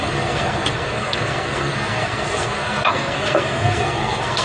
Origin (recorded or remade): remade